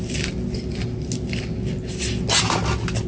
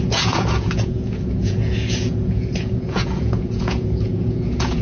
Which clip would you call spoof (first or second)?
second